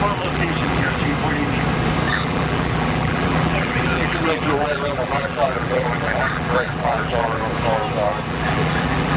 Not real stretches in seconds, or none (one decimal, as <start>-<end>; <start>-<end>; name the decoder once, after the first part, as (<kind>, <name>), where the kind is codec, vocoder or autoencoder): 0.0-1.0 (vocoder, BigVGAN v2); 2.1-7.4; 8.3-9.2